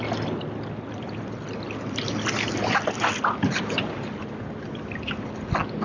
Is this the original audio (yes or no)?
yes